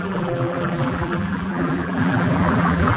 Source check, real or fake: fake